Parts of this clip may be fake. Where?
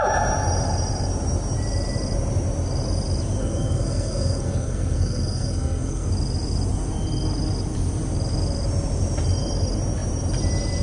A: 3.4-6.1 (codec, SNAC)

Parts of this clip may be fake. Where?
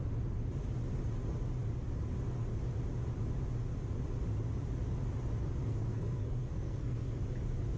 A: 5.6-7.2 (codec, SNAC)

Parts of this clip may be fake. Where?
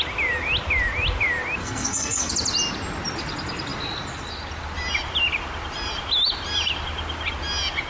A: 1.6-2.3 (codec, SNAC)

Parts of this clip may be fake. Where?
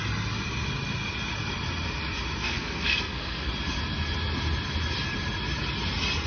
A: 2.4-3.5 (codec, SNAC)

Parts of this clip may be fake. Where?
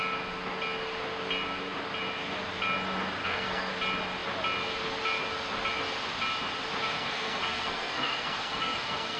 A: 3.2-3.7 (codec, SNAC); 6.8-9.2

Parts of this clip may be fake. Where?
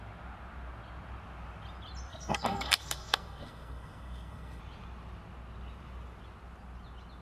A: 2.1-4.6 (codec, SNAC)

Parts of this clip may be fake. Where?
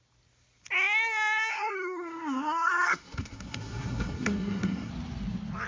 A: 1.5-4.9 (codec, SNAC)